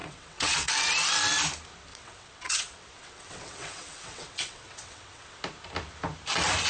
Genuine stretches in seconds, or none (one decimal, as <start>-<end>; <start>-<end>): 0.7-1.9; 5.4-6.7